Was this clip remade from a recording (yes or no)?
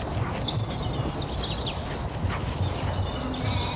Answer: no